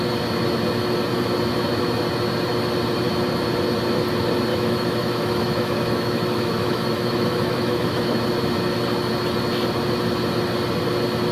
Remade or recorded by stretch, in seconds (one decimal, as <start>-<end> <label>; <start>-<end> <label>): 0.0-4.5 recorded; 4.5-8.2 remade; 8.2-11.3 recorded